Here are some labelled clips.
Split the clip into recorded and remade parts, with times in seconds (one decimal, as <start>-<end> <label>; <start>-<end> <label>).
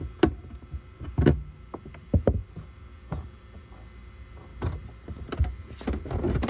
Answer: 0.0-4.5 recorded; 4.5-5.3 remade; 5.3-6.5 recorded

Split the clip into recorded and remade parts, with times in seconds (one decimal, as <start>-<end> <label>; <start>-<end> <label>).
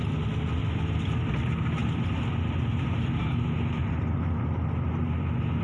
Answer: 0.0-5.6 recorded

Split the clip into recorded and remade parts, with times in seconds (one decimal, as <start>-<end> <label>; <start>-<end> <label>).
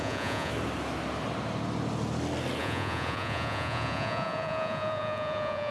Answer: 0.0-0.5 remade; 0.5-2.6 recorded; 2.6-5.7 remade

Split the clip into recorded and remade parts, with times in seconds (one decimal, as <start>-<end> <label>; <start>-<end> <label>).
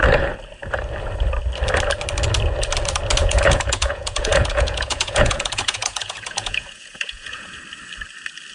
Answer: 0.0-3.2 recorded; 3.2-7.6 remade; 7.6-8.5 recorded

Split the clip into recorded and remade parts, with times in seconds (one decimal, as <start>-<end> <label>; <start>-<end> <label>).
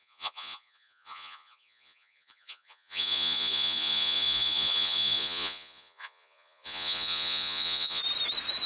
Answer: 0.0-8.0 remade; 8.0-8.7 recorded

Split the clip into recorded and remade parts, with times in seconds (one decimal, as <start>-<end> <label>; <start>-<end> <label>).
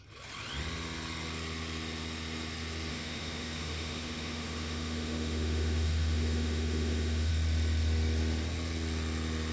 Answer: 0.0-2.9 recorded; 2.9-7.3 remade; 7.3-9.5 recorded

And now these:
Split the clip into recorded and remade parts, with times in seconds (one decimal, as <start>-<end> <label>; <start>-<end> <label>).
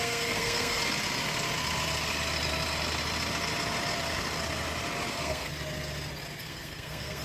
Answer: 0.0-0.8 remade; 0.8-5.1 recorded; 5.1-5.5 remade; 5.5-6.4 recorded; 6.4-7.2 remade